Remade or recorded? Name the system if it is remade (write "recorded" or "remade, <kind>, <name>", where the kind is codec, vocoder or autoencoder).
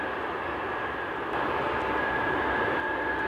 recorded